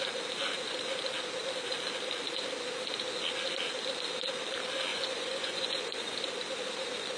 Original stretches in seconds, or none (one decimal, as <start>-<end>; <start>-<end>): 0.0-4.9; 6.1-7.2